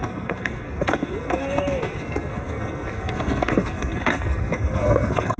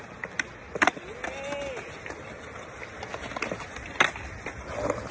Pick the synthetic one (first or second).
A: first